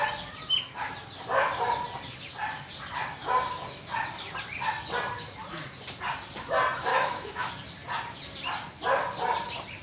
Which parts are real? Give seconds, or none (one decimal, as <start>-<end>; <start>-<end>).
0.0-6.9; 7.5-9.8